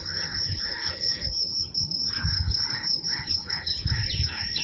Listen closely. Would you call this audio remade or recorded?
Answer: remade